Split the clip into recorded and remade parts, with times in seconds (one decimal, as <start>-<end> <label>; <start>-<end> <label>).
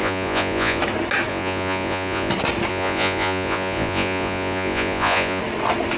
0.0-0.8 remade; 0.8-1.3 recorded; 1.3-2.3 remade; 2.3-2.7 recorded; 2.7-5.4 remade; 5.4-6.0 recorded